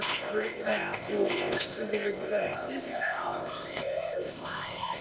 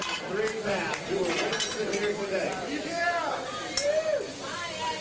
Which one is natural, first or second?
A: second